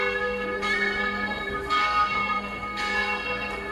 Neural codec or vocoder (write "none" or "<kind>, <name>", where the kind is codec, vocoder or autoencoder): codec, SNAC